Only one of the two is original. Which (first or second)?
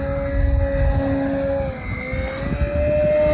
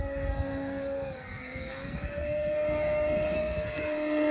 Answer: first